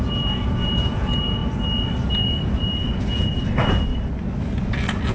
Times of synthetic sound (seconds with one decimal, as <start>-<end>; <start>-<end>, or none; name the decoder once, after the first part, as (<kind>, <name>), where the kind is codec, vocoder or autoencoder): 0.0-1.4 (vocoder, Vocos); 2.1-3.9